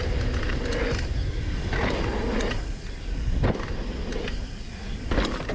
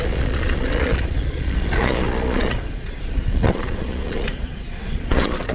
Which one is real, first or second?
first